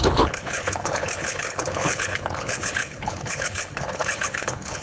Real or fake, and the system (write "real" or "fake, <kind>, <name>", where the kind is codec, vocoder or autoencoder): fake, codec, HILCodec